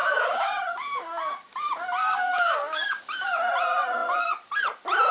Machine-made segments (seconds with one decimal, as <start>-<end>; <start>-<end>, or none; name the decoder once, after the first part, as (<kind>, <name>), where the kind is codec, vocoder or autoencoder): 0.0-0.5 (codec, DAC); 2.0-3.0